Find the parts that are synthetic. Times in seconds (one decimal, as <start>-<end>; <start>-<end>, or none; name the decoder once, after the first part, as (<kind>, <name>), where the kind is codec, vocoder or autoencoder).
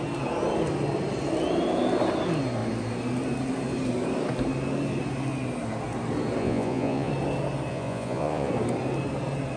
6.4-7.1 (vocoder, Vocos); 7.7-8.5